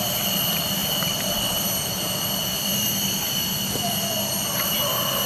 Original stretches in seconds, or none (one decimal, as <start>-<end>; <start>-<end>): 0.0-0.8; 1.3-2.5; 3.2-5.3